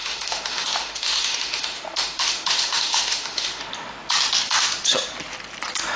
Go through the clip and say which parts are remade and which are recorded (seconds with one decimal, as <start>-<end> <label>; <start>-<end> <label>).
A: 0.0-3.6 remade; 3.6-6.0 recorded